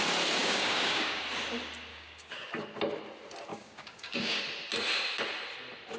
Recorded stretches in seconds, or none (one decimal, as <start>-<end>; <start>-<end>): 0.0-0.4; 1.2-1.9; 2.5-3.5; 4.4-6.0

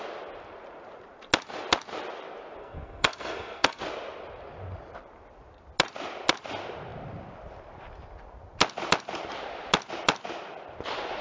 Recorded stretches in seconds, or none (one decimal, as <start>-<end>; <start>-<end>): 0.0-2.6; 3.8-11.2